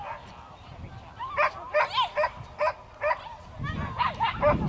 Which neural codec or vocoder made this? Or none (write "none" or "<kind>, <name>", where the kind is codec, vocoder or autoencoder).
none